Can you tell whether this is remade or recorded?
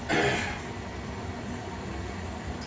recorded